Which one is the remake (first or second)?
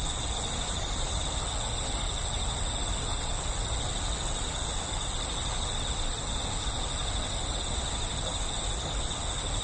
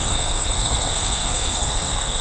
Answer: second